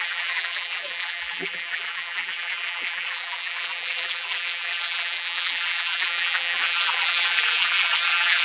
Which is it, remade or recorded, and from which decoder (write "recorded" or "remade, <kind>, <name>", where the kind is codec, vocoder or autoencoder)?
remade, vocoder, BigVGAN v2